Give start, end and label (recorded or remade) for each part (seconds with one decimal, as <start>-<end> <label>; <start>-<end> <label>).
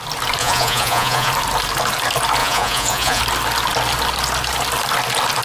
0.0-0.4 recorded; 0.4-1.3 remade; 1.3-2.4 recorded; 2.4-3.2 remade; 3.2-5.4 recorded